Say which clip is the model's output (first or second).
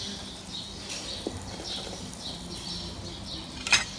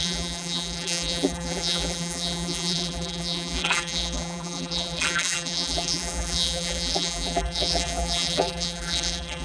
second